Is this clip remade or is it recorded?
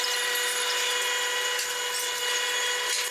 recorded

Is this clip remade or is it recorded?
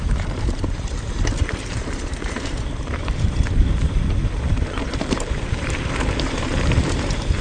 remade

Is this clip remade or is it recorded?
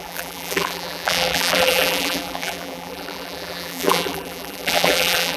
remade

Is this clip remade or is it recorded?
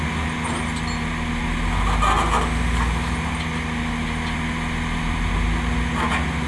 recorded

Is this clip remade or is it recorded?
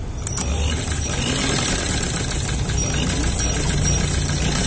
recorded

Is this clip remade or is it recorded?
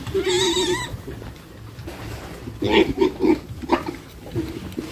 recorded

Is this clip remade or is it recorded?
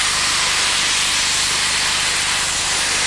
recorded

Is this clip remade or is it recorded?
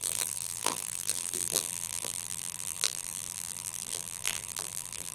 remade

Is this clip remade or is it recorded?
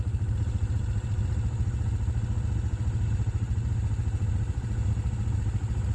recorded